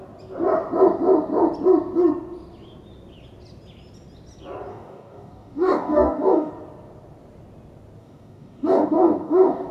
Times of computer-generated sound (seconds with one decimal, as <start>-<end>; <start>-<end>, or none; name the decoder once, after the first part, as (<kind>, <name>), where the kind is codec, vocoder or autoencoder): 4.7-6.5 (codec, DAC); 8.0-9.7